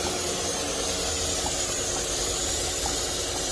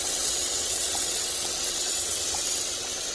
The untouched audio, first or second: first